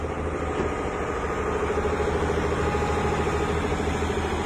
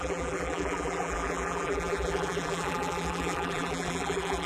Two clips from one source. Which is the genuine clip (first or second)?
first